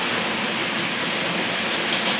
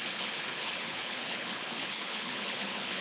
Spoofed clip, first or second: second